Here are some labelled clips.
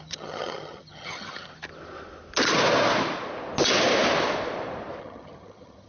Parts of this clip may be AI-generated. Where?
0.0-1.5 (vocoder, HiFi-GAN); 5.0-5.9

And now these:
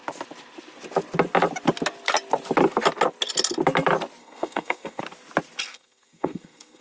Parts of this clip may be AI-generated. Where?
4.2-5.0 (codec, SNAC); 5.7-6.8

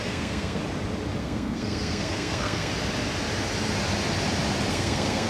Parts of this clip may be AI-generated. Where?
0.0-0.6 (codec, SNAC); 1.2-2.7; 4.7-5.3